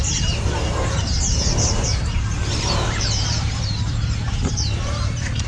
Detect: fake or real fake